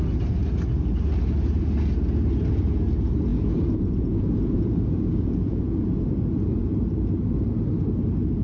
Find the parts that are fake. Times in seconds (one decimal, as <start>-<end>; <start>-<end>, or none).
3.3-6.0